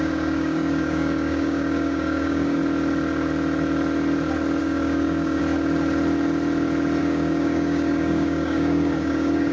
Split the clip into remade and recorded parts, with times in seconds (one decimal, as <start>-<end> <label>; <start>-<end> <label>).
0.0-2.6 remade; 2.6-4.6 recorded; 4.6-5.4 remade; 5.4-7.0 recorded; 7.0-9.5 remade